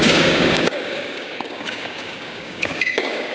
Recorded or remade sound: remade